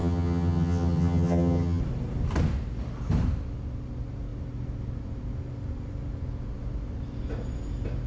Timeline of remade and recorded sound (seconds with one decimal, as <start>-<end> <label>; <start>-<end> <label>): 0.0-1.8 remade; 1.8-8.1 recorded